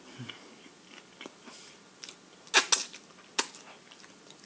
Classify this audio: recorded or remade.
recorded